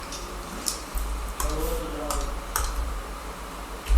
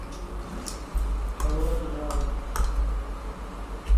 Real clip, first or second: second